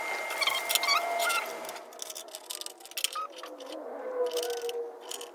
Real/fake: real